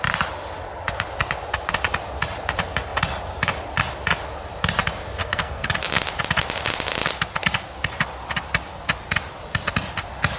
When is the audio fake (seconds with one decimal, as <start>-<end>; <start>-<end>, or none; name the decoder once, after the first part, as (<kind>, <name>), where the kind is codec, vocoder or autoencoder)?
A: 5.2-5.7 (codec, SNAC)